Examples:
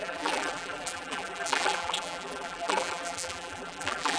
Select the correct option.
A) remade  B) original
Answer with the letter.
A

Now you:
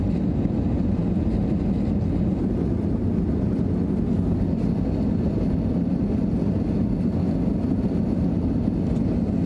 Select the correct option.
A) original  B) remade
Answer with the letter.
A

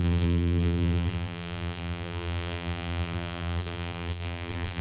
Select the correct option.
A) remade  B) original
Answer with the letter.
A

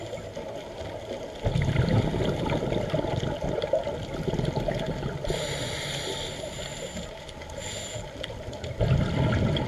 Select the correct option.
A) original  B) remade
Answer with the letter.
A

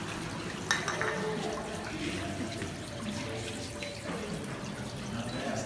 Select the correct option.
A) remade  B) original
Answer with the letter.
B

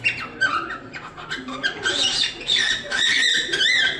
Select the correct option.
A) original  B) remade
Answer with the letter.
B